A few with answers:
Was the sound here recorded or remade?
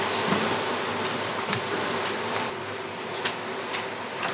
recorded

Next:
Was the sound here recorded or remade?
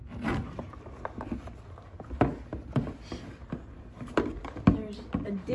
recorded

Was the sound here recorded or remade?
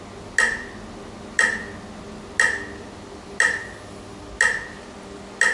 recorded